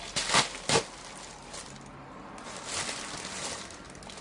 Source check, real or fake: real